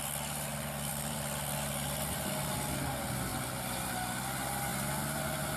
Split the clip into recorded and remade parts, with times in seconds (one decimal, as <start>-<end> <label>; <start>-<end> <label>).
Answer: 0.0-5.6 recorded